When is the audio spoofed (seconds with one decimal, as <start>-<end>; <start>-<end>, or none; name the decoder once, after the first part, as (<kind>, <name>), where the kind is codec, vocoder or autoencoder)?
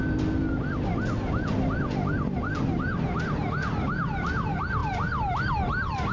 none